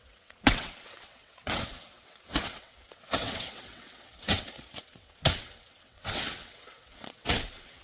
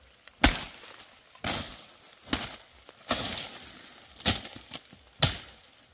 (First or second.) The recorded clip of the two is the second